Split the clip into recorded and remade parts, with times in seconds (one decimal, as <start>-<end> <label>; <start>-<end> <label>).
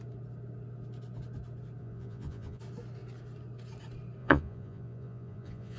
0.0-1.8 recorded; 1.8-2.6 remade; 2.6-4.2 recorded; 4.2-5.8 remade